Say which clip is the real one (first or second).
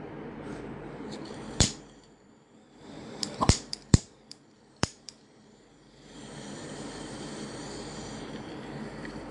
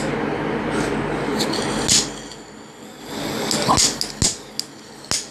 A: second